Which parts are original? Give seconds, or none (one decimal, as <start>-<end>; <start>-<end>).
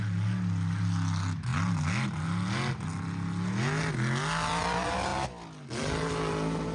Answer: 0.0-6.7